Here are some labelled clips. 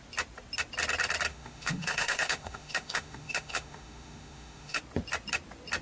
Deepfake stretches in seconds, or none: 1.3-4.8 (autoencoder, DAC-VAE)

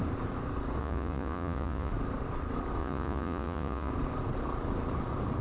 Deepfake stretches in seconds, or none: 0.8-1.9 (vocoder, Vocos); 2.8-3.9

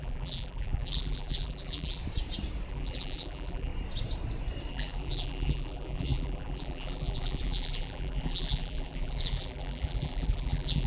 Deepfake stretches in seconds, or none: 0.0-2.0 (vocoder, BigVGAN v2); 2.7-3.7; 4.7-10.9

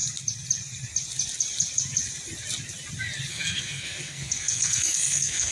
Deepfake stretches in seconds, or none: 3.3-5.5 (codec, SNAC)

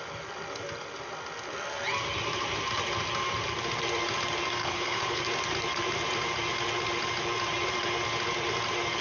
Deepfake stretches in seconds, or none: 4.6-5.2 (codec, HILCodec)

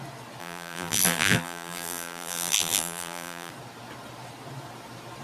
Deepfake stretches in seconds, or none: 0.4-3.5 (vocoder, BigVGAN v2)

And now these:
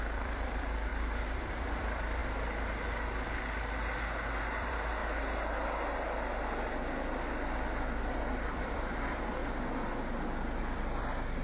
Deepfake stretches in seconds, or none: 0.0-2.2 (vocoder, BigVGAN v2); 4.4-5.0; 6.7-9.4; 10.6-11.4